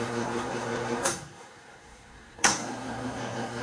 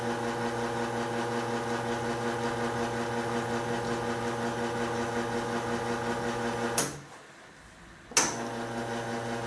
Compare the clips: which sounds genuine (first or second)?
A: second